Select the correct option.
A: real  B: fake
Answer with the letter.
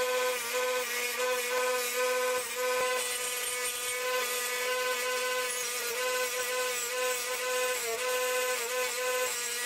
A